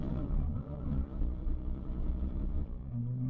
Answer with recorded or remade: remade